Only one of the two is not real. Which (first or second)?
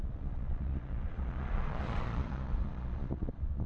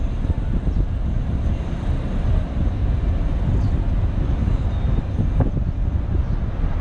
first